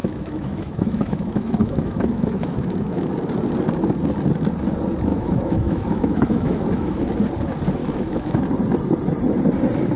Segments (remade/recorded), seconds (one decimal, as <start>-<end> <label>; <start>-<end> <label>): 0.0-3.1 remade; 3.1-5.1 recorded; 5.1-7.0 remade; 7.0-7.8 recorded; 7.8-8.4 remade; 8.4-10.0 recorded